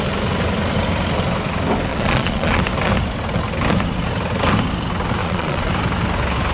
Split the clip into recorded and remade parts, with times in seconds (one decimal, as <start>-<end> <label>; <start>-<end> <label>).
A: 0.0-1.9 recorded; 1.9-2.6 remade; 2.6-5.2 recorded; 5.2-5.7 remade; 5.7-6.5 recorded

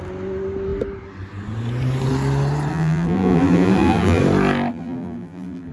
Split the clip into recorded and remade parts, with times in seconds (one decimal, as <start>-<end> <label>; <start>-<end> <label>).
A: 0.0-2.7 recorded; 2.7-4.2 remade; 4.2-4.7 recorded; 4.7-5.7 remade

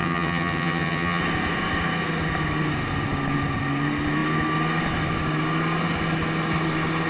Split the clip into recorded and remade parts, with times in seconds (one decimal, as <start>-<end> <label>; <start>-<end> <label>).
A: 0.0-1.2 remade; 1.2-7.1 recorded